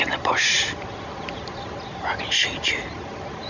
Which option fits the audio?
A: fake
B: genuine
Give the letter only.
A